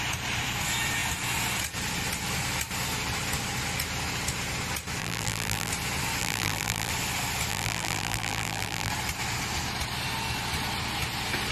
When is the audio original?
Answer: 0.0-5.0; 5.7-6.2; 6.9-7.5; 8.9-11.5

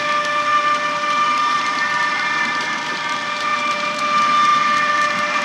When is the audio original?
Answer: 0.0-0.5; 3.0-3.5; 4.0-5.4

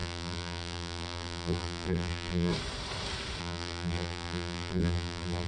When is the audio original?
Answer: 2.5-3.4

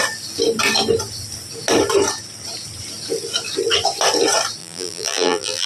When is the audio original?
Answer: 0.0-4.6

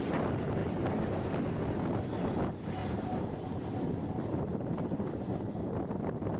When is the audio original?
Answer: 0.0-2.8; 3.7-4.5; 5.2-6.4